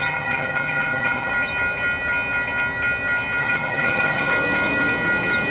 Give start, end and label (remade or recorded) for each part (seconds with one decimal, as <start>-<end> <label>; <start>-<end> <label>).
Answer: 0.0-1.3 remade; 1.3-3.4 recorded; 3.4-4.3 remade; 4.3-5.5 recorded